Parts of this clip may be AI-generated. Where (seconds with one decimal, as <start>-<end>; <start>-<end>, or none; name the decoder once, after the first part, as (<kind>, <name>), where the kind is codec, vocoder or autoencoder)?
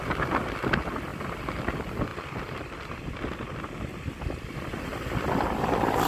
none